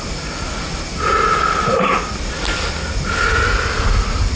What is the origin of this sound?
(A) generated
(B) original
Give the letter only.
B